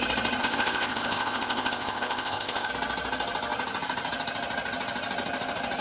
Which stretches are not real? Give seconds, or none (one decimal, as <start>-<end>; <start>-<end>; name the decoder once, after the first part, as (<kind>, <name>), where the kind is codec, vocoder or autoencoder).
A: 0.4-2.7 (codec, ZipCodec)